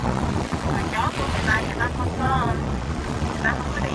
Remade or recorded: remade